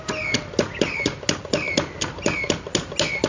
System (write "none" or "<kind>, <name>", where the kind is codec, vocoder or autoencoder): none